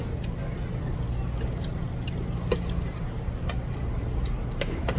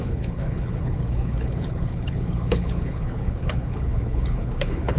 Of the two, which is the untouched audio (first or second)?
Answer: first